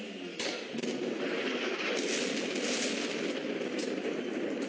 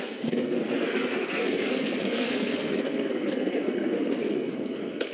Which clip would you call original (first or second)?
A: first